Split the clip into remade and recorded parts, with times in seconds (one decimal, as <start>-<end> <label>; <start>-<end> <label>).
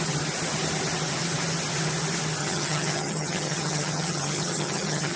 0.0-2.4 recorded; 2.4-5.2 remade